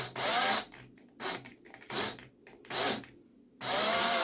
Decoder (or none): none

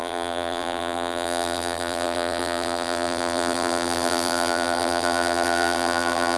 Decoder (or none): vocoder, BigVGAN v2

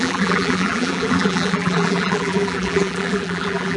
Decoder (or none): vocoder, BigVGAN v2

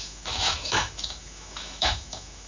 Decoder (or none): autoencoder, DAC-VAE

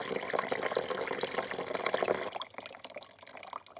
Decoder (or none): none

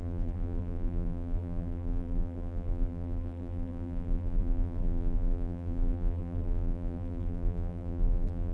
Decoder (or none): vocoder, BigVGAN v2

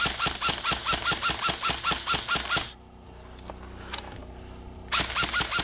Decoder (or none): none